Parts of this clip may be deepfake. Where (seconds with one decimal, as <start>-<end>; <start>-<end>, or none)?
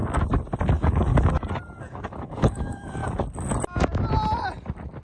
0.7-1.1; 1.8-3.0